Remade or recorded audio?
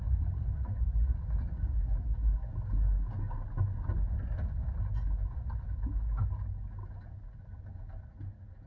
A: recorded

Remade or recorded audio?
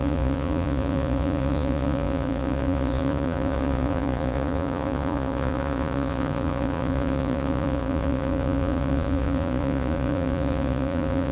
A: remade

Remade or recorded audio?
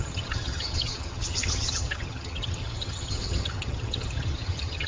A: remade